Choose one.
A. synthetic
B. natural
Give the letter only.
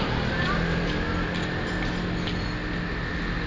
B